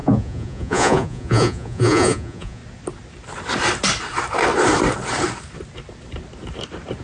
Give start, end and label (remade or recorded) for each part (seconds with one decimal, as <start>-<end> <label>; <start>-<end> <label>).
0.0-2.6 remade; 2.6-7.0 recorded